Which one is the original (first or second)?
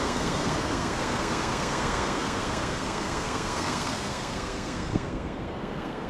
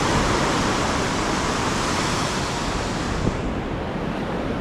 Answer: second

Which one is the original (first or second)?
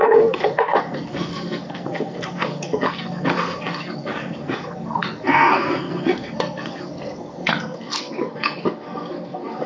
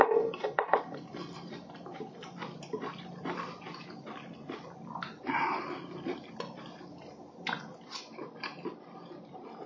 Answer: second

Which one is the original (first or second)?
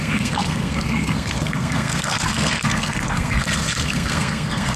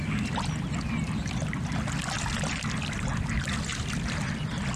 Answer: second